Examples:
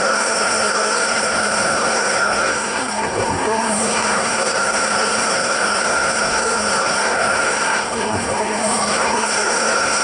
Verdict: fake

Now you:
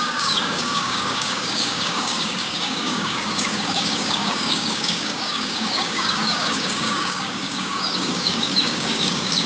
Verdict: fake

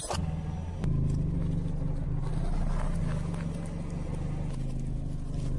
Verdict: real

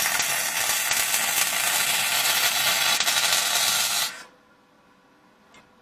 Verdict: real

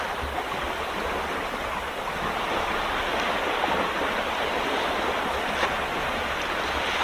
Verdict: real